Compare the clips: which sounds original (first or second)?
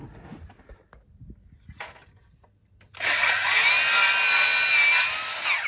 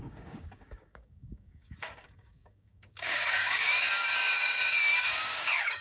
first